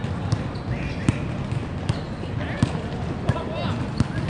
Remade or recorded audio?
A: recorded